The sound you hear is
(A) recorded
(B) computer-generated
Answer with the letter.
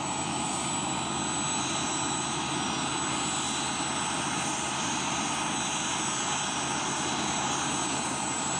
A